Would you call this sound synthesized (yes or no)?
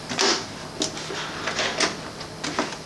no